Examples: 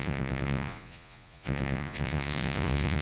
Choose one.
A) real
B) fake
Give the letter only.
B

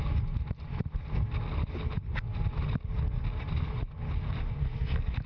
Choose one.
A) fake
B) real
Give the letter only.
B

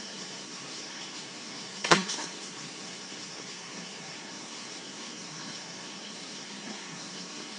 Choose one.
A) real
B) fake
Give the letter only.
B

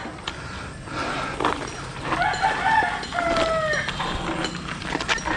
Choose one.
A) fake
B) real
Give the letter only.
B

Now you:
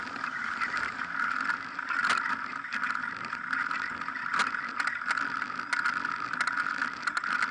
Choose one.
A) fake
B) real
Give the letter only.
B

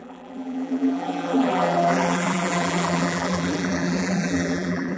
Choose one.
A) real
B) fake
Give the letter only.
B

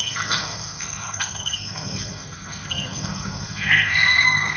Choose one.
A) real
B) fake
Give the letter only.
B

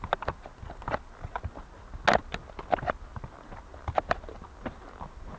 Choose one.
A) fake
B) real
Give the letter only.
B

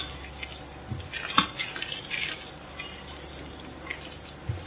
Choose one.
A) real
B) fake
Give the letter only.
A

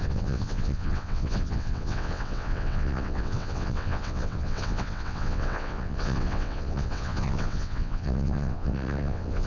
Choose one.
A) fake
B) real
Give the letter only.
A